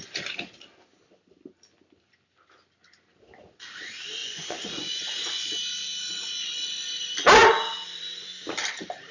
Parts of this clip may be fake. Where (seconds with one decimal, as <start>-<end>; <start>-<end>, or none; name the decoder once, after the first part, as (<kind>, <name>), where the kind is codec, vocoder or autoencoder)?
4.2-5.5 (vocoder, Vocos)